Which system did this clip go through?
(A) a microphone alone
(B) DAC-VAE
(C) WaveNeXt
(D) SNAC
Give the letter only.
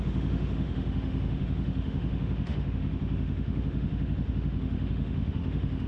B